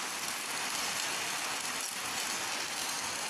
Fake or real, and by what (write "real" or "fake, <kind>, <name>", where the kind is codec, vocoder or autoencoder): real